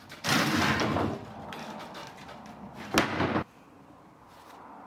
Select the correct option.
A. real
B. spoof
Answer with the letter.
A